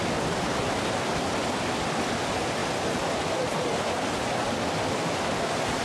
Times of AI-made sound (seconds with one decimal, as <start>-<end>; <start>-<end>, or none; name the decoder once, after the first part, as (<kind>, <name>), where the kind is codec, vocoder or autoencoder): none